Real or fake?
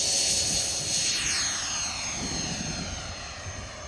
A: real